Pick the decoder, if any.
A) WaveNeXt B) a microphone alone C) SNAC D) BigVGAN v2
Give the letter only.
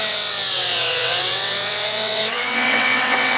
A